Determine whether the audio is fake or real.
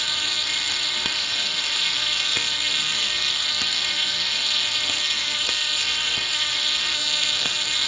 fake